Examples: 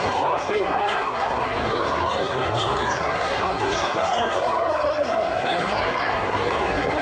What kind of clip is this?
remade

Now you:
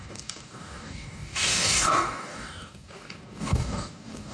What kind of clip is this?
remade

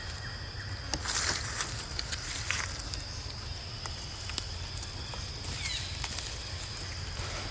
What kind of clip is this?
recorded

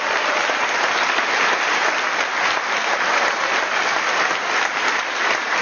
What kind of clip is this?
remade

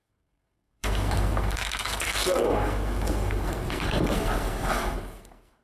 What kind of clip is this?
remade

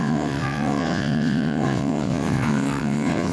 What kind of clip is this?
remade